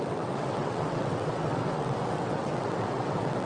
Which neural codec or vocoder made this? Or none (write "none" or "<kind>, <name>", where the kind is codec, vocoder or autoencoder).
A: vocoder, WaveNeXt